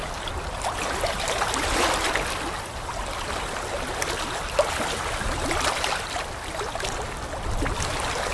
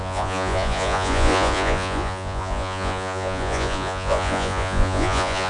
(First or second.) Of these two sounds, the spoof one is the second